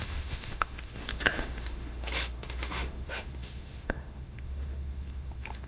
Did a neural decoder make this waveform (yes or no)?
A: yes